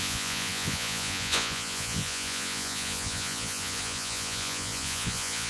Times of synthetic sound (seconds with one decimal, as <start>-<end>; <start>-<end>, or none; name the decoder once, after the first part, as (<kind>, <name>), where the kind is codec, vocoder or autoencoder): 0.0-5.5 (vocoder, Vocos)